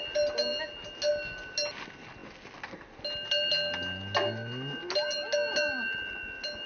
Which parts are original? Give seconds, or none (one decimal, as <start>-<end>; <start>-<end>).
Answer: 0.0-6.7